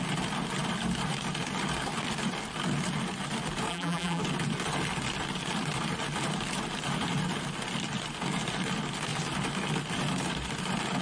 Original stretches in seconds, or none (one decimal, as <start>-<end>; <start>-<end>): 0.0-3.7; 4.2-11.0